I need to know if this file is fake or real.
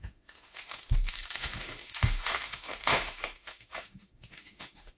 fake